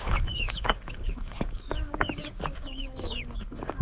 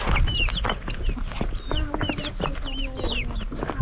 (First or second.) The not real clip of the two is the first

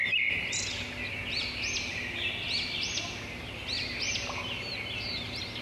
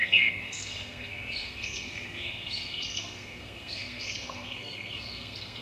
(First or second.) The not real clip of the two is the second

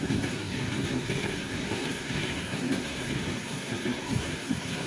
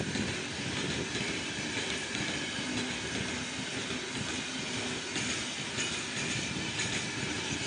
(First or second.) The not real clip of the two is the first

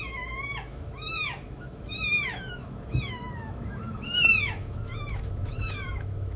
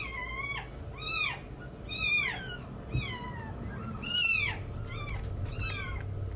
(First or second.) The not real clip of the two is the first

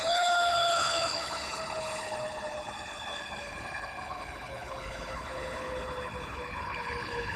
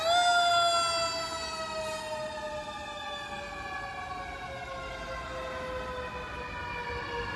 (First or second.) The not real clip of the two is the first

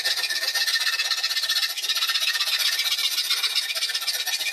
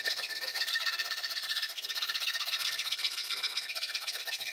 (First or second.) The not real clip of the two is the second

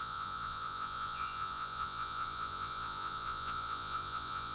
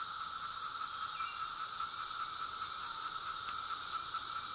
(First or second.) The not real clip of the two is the first